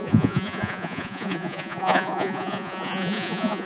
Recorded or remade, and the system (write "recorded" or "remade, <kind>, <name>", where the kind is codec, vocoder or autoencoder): remade, vocoder, Vocos